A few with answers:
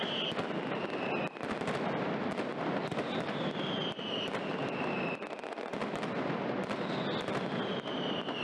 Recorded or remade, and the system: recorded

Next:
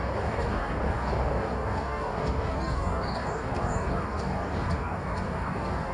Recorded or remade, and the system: remade, codec, DAC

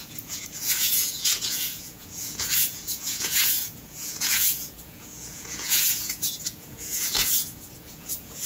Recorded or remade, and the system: remade, vocoder, Vocos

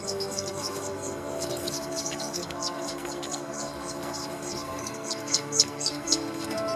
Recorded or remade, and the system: remade, codec, SNAC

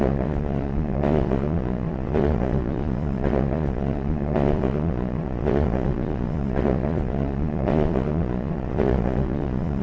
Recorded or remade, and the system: remade, vocoder, Vocos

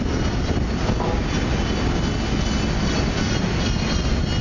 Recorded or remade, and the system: recorded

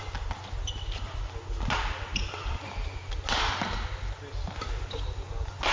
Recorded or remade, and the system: recorded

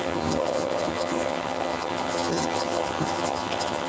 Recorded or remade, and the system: remade, vocoder, HiFi-GAN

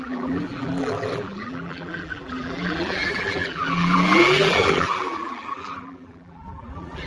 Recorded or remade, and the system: remade, vocoder, BigVGAN v2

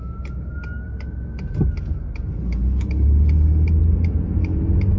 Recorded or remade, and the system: recorded